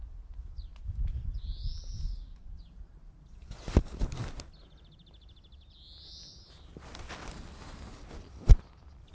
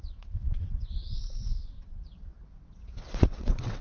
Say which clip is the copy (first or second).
second